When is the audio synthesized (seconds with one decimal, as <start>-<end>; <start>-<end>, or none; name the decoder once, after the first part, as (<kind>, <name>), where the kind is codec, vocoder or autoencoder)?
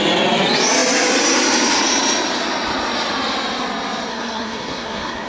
4.1-5.3 (codec, SNAC)